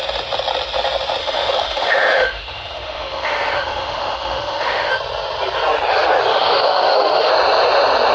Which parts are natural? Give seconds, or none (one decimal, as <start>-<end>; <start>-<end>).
0.0-1.2; 4.9-6.3; 7.3-8.1